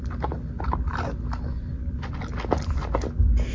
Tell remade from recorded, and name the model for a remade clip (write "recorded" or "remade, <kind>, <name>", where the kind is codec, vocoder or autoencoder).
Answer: recorded